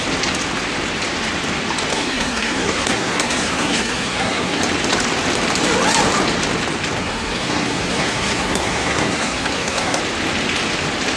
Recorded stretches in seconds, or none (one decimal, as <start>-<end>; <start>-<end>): 0.0-1.9; 4.6-7.0; 10.0-11.2